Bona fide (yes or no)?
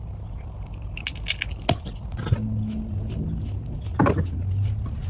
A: yes